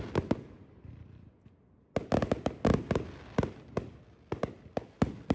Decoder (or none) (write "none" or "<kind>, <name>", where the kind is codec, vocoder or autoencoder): none